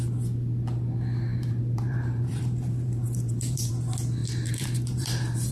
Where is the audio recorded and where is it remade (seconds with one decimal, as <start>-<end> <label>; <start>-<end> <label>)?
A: 0.0-1.3 recorded; 1.3-3.7 remade; 3.7-4.2 recorded; 4.2-5.5 remade